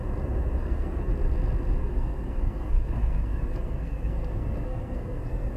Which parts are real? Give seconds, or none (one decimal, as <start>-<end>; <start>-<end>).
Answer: 0.0-0.6; 1.1-1.8